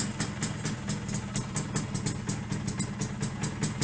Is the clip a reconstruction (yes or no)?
no